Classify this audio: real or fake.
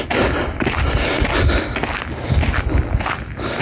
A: real